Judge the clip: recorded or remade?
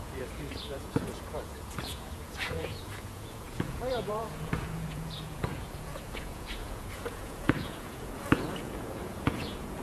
remade